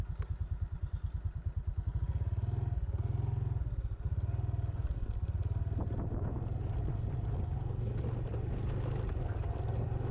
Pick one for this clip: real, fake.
real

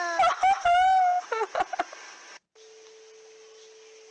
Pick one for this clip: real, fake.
real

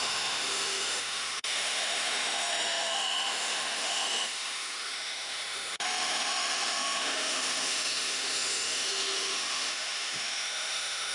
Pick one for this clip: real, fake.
fake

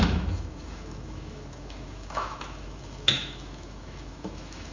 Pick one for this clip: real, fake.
fake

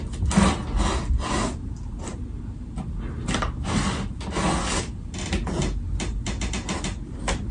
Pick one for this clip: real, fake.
real